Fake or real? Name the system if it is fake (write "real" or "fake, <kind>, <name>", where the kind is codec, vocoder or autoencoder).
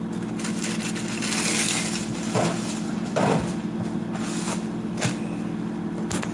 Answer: real